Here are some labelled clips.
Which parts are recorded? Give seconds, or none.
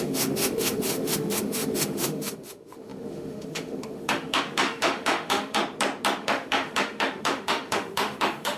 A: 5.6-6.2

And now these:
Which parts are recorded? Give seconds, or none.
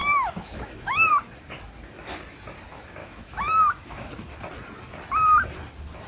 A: 1.1-3.0; 4.1-6.1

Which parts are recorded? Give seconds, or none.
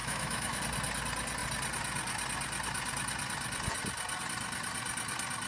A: 0.6-5.5